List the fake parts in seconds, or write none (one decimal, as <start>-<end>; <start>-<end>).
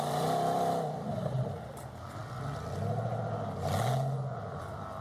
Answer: 0.0-2.2